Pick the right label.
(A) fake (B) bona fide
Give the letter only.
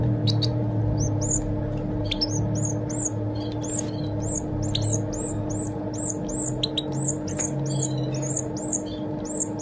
B